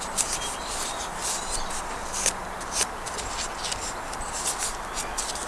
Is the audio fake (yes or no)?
yes